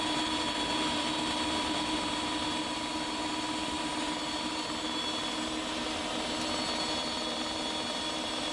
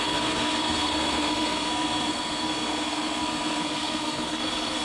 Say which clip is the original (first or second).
first